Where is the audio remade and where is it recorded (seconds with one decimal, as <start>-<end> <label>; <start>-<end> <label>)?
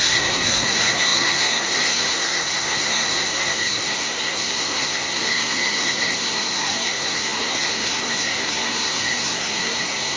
0.0-10.2 remade